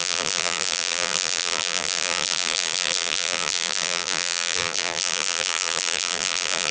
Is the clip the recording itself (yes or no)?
no